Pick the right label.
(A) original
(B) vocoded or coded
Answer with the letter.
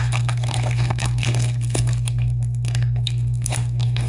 B